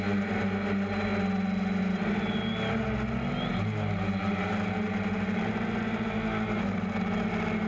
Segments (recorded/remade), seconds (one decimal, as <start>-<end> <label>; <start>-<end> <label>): 0.0-7.7 recorded